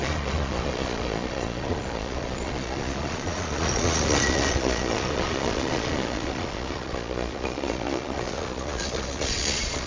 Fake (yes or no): yes